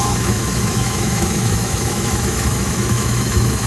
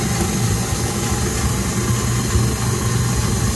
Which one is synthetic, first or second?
first